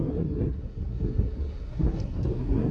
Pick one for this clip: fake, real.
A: fake